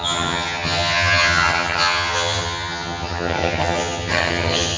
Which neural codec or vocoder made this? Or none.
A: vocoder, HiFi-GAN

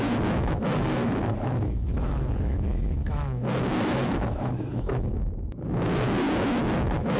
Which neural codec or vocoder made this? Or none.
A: autoencoder, DAC-VAE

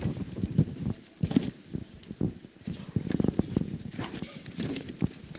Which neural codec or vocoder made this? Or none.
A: vocoder, BigVGAN v2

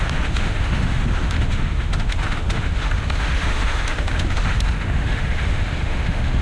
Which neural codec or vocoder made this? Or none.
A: autoencoder, DAC-VAE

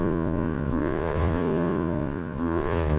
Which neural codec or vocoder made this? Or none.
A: vocoder, Vocos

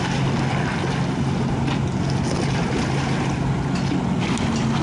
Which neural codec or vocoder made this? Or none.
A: none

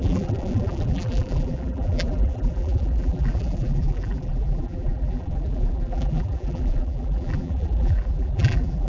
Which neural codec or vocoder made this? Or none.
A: vocoder, BigVGAN v2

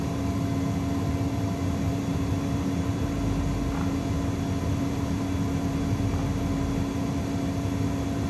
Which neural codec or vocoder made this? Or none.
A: none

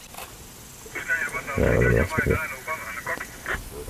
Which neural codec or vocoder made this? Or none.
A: none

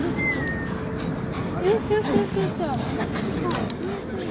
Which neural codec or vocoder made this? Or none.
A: none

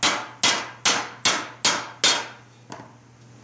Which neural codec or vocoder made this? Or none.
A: none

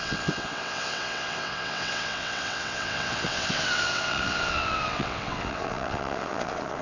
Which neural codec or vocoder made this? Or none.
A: vocoder, WaveNeXt